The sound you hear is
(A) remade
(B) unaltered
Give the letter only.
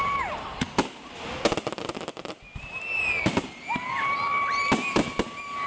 B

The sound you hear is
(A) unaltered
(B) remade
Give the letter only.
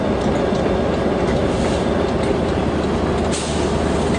A